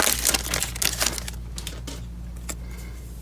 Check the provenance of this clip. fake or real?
real